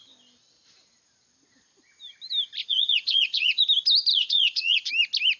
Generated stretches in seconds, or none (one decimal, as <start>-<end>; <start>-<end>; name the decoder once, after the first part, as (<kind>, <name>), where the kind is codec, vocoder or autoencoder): 2.6-3.6 (vocoder, Vocos); 4.1-4.9